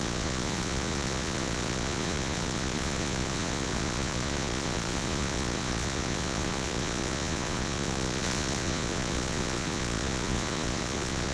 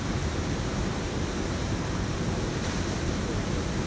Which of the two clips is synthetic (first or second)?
first